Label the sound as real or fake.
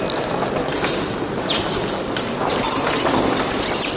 real